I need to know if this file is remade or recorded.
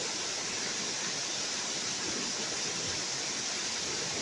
recorded